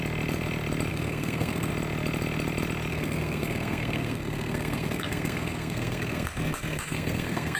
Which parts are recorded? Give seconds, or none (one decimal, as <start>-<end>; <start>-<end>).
0.0-0.9; 1.7-2.9